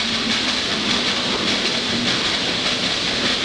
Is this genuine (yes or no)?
yes